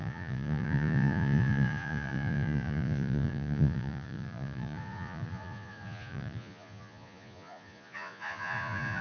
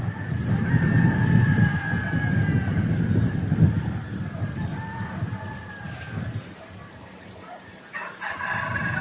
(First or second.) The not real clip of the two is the first